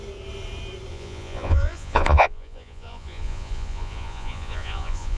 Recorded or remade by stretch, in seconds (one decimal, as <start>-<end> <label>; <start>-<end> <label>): 0.0-0.9 recorded; 0.9-5.2 remade